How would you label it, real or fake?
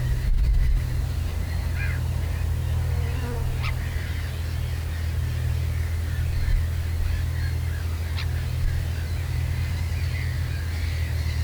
real